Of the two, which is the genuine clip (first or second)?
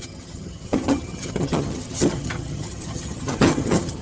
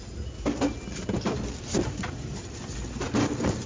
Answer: second